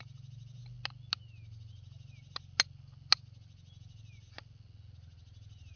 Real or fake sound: real